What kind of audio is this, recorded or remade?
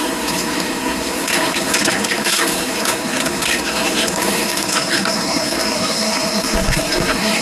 remade